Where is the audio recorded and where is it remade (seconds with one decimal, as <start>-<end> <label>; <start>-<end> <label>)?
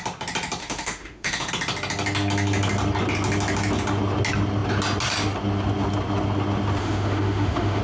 0.0-0.6 recorded; 0.6-1.5 remade; 1.5-6.8 recorded; 6.8-7.8 remade